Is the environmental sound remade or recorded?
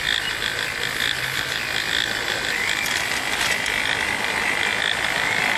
recorded